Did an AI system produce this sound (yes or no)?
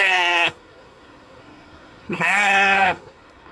yes